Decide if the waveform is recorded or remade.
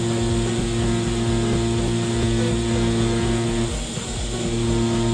recorded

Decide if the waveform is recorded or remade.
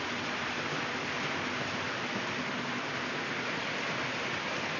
recorded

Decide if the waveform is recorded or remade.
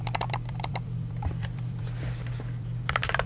remade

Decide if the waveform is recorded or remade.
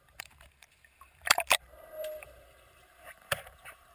remade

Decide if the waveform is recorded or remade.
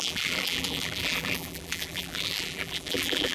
remade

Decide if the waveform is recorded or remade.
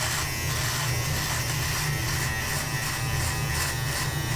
recorded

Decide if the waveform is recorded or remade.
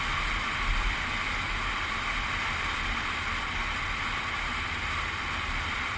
remade